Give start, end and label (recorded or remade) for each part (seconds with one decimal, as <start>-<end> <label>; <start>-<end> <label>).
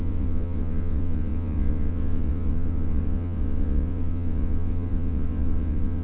0.0-6.0 remade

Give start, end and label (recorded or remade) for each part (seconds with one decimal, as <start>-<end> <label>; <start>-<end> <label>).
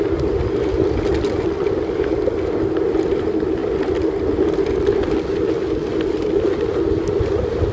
0.0-7.7 recorded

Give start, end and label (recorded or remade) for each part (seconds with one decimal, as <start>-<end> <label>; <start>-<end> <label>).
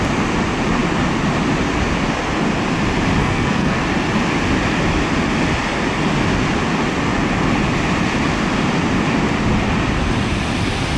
0.0-3.2 recorded; 3.2-3.8 remade; 3.8-11.0 recorded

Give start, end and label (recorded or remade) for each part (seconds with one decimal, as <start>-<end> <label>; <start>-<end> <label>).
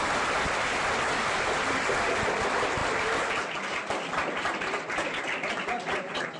0.0-6.4 recorded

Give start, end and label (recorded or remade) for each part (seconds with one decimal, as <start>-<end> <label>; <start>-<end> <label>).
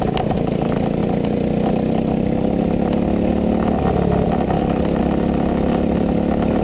0.0-6.6 recorded